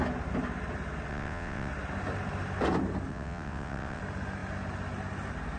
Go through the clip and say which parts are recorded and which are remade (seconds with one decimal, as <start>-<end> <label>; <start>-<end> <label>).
0.0-1.1 recorded; 1.1-1.7 remade; 1.7-3.1 recorded; 3.1-4.0 remade; 4.0-5.6 recorded